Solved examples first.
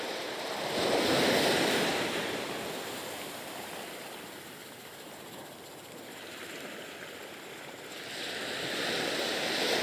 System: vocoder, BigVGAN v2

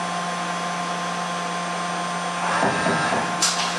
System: none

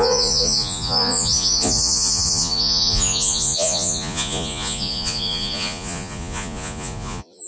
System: vocoder, Vocos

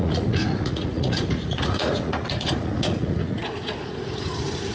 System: vocoder, Vocos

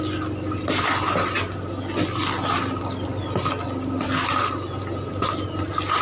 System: none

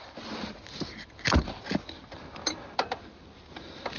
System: none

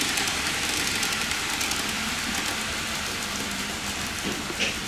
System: none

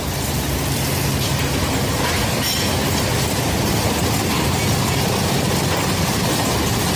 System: none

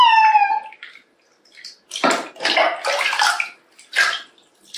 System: none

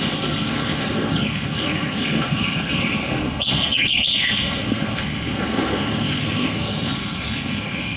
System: codec, SNAC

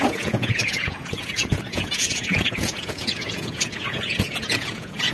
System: vocoder, Vocos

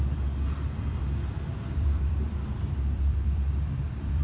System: vocoder, BigVGAN v2